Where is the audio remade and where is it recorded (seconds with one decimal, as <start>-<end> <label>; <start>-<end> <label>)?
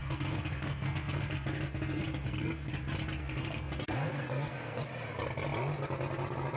0.0-2.7 remade; 2.7-3.2 recorded; 3.2-4.8 remade; 4.8-6.6 recorded